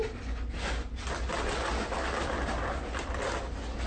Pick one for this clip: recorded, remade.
recorded